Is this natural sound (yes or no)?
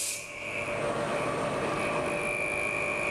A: yes